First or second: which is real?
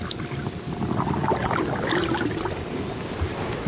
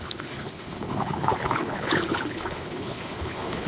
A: first